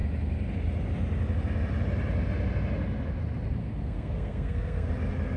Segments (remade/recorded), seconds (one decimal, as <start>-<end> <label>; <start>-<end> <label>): 0.0-3.6 recorded; 3.6-4.9 remade; 4.9-5.4 recorded